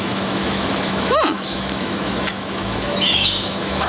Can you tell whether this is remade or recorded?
remade